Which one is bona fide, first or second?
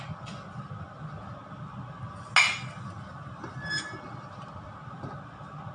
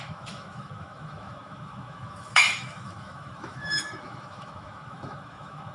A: first